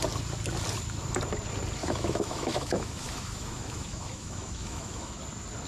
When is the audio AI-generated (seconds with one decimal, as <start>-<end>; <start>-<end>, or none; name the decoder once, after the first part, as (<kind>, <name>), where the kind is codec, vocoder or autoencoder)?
1.8-5.2 (autoencoder, DAC-VAE)